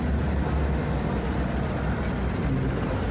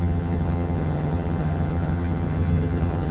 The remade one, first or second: second